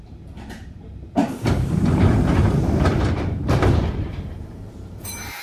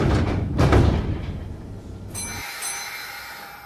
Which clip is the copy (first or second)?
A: first